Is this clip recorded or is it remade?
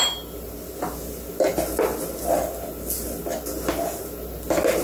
recorded